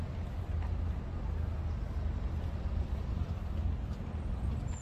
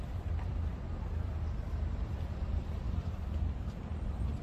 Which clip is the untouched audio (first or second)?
first